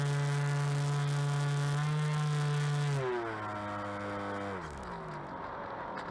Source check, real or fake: real